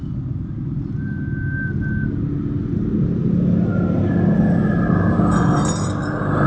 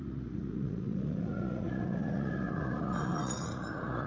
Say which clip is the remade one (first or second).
second